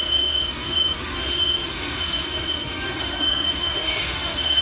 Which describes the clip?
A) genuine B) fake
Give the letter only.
B